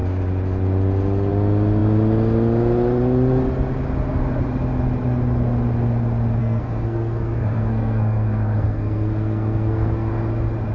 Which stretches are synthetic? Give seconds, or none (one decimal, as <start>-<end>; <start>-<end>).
6.4-10.1